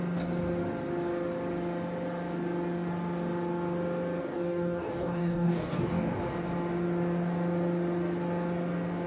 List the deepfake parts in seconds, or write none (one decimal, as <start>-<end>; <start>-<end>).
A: 4.2-6.2